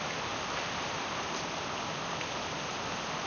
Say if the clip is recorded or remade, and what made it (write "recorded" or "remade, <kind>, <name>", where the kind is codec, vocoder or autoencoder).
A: recorded